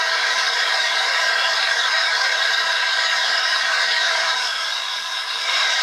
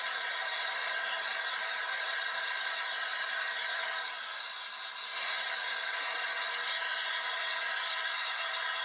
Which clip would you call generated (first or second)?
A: first